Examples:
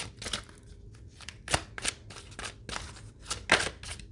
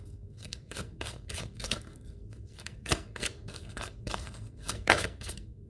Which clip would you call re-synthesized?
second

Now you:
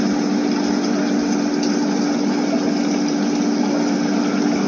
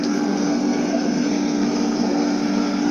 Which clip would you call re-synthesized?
second